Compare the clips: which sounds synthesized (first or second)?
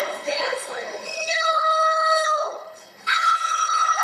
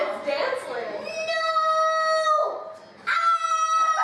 first